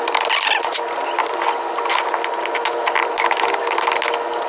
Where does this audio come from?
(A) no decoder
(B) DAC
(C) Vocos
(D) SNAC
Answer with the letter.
A